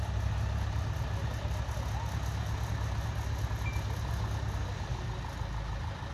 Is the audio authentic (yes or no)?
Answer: yes